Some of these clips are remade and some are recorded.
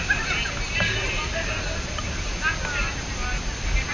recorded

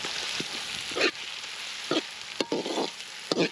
recorded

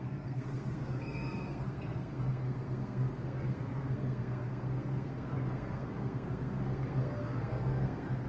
remade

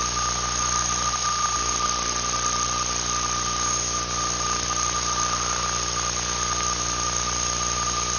recorded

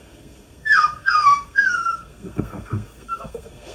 remade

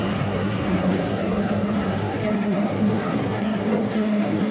remade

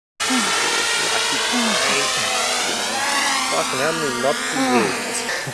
recorded